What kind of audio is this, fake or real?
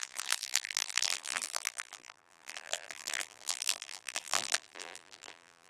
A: fake